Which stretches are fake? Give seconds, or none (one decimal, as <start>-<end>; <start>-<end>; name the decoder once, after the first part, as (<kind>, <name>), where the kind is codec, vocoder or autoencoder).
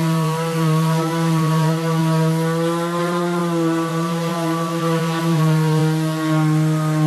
0.0-2.0 (vocoder, BigVGAN v2); 3.0-3.4; 3.9-5.8